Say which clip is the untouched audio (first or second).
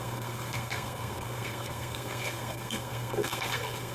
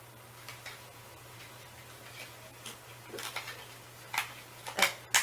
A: second